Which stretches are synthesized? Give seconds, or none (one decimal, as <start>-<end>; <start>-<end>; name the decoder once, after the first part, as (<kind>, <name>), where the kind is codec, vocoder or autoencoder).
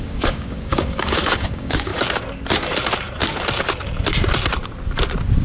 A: 0.0-1.9 (codec, DAC)